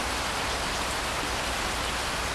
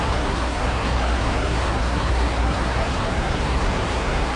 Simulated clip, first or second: second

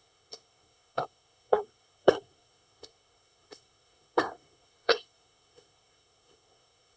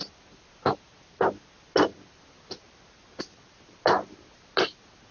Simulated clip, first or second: first